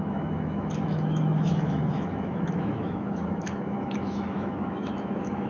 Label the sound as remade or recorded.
remade